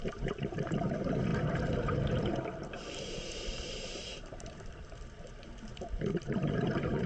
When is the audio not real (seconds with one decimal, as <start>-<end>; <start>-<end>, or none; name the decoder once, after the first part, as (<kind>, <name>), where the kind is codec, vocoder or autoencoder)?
0.0-7.1 (vocoder, BigVGAN v2)